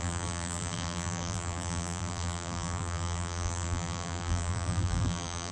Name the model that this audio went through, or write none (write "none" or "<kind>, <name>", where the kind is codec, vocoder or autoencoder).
vocoder, BigVGAN v2